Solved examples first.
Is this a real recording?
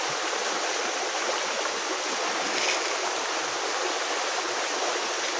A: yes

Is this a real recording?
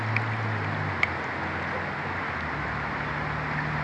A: yes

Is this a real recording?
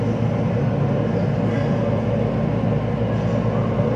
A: yes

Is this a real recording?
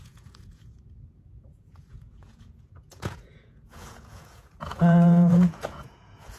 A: no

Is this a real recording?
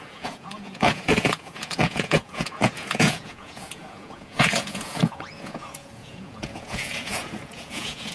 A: no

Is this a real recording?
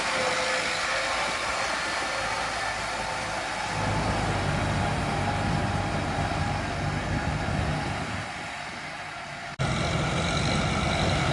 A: yes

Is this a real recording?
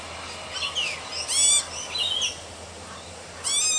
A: yes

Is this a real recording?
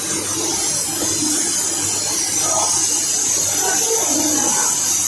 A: yes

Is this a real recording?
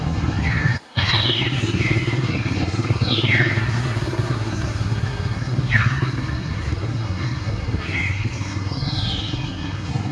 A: no